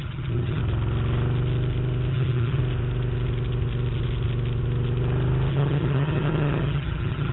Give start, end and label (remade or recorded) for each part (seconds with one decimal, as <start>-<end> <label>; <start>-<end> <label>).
0.0-0.6 remade; 0.6-2.1 recorded; 2.1-2.6 remade; 2.6-5.5 recorded; 5.5-7.3 remade